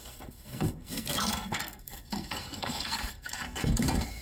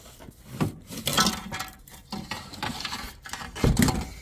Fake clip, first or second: first